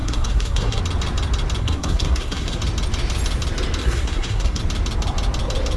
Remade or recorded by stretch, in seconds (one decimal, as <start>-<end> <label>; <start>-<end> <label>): 0.0-0.8 remade; 0.8-1.6 recorded; 1.6-2.6 remade; 2.6-3.8 recorded; 3.8-4.6 remade; 4.6-5.8 recorded